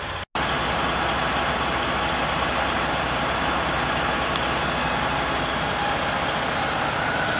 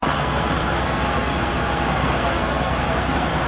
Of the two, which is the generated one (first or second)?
second